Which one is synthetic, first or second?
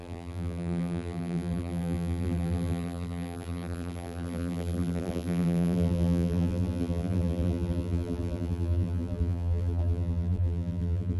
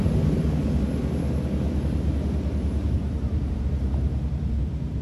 first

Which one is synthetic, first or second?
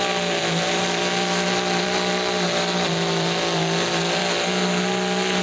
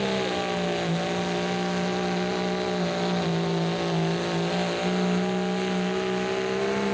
first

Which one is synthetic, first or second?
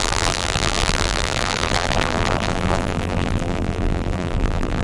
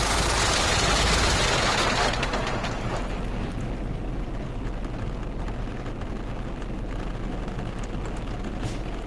first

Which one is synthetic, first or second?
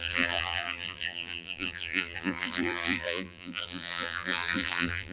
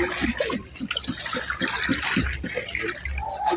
first